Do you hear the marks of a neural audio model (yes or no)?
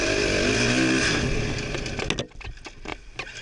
no